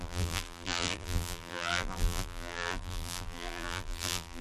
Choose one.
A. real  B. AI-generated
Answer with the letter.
B